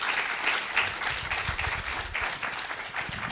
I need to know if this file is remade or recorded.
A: recorded